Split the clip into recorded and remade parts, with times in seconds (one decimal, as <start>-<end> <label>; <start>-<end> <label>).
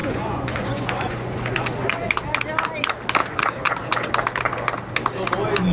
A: 0.0-2.1 remade; 2.1-3.2 recorded; 3.2-4.1 remade; 4.1-5.7 recorded